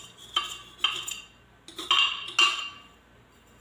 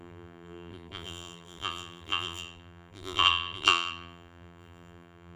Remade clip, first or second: second